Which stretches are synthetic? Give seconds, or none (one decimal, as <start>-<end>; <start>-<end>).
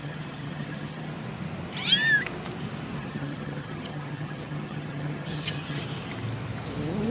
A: 0.0-1.1; 3.0-5.8